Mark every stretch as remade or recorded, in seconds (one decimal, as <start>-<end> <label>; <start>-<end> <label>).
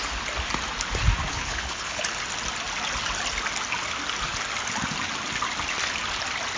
0.0-1.3 recorded; 1.3-2.0 remade; 2.0-6.6 recorded